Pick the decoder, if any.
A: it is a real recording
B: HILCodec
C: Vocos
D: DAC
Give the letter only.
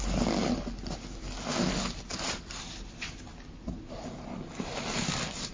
A